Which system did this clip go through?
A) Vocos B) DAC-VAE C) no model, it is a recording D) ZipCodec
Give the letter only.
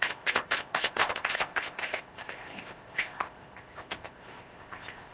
D